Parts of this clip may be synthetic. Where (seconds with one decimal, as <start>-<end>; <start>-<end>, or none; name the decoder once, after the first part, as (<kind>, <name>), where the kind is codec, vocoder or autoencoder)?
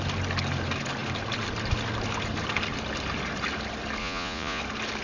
4.0-4.6 (vocoder, Vocos)